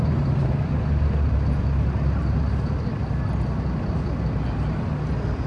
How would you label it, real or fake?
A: real